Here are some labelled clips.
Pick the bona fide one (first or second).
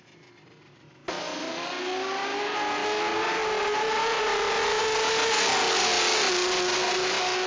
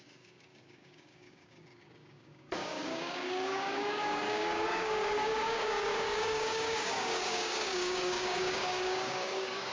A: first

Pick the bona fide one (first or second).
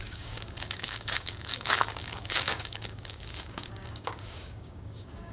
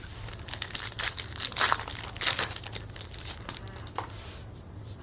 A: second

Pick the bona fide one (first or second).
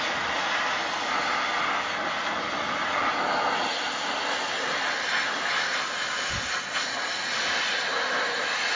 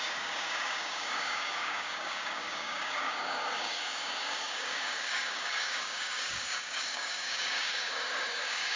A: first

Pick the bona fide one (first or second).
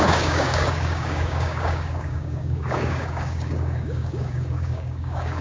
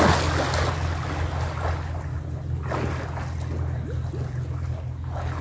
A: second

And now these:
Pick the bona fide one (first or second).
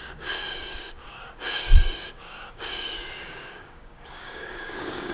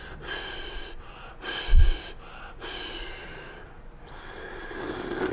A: second